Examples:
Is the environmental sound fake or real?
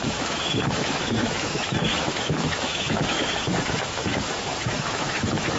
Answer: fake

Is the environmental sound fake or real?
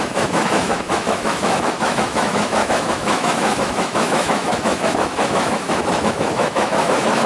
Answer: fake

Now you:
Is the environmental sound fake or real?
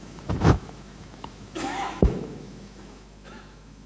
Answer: fake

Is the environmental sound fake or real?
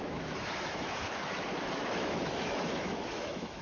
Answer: fake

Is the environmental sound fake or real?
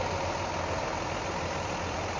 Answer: real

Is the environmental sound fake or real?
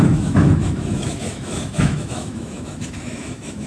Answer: fake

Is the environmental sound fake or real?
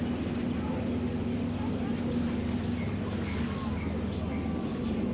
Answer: real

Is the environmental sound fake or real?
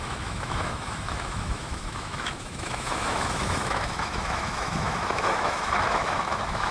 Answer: fake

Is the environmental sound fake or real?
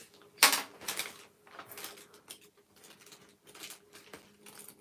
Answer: real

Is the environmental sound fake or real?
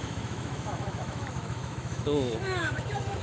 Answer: fake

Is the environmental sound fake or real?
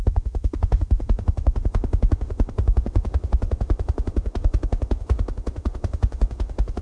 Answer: fake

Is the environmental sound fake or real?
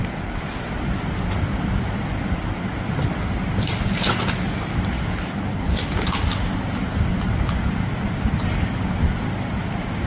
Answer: real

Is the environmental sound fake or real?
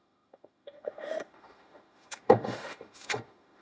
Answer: fake